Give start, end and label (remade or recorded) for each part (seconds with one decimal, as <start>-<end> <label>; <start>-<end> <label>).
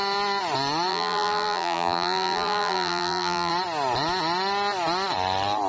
0.0-0.9 recorded; 0.9-3.5 remade; 3.5-5.7 recorded